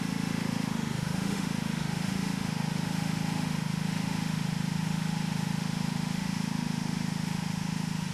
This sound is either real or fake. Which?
fake